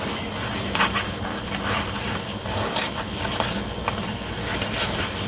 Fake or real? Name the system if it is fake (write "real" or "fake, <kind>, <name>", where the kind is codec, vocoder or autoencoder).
real